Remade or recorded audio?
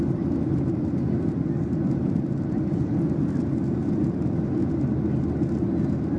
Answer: recorded